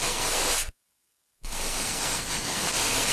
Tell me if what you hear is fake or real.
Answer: fake